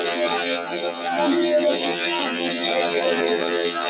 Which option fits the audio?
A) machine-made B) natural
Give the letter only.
A